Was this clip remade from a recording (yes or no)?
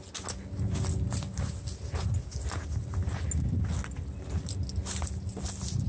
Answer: no